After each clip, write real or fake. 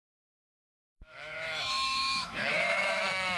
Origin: fake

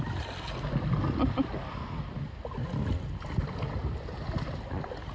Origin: real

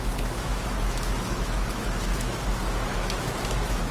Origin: fake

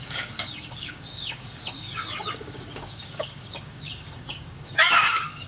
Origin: fake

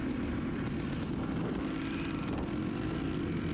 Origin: real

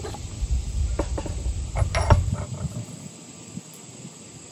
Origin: real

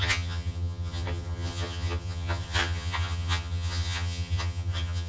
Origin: fake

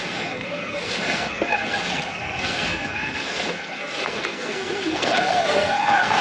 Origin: fake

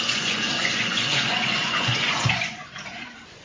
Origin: fake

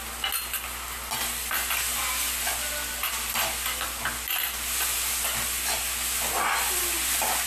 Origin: real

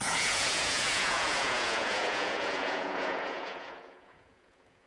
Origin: fake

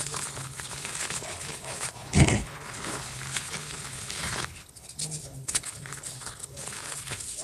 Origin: fake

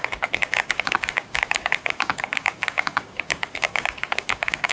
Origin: fake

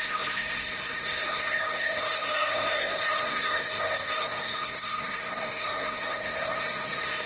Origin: fake